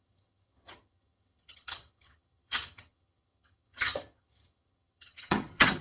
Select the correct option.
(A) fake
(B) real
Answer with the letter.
A